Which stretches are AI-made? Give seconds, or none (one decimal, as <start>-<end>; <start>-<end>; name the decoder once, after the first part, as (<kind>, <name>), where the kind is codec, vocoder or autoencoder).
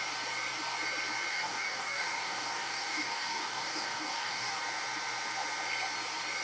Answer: 1.3-4.6 (codec, DAC)